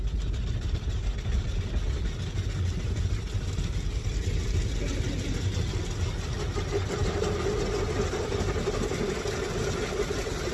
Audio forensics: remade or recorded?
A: recorded